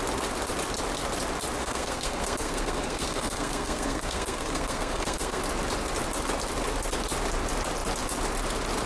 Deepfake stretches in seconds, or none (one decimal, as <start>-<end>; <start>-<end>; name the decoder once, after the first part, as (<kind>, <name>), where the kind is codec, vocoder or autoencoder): 1.6-5.4 (codec, SNAC)